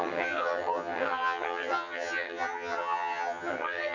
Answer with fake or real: fake